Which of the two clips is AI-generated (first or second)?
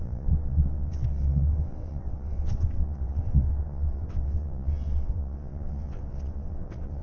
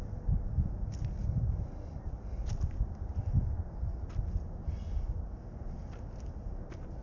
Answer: first